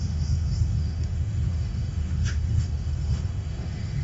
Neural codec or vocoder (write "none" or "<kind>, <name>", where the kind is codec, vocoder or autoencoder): autoencoder, DAC-VAE